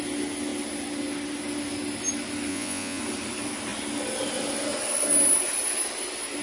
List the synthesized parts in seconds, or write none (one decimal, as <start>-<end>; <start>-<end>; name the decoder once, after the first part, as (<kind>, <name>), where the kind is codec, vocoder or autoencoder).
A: 2.5-3.0 (vocoder, Vocos)